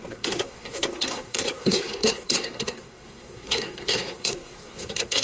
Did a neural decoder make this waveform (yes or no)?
yes